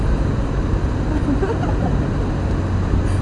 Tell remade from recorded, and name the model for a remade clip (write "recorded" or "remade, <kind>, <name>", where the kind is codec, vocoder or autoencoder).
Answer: recorded